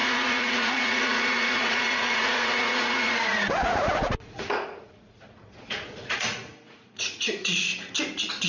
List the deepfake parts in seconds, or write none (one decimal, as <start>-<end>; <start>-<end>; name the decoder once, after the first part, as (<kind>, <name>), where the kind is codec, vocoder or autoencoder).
0.0-7.7 (vocoder, Vocos)